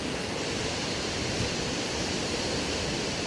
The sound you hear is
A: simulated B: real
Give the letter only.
B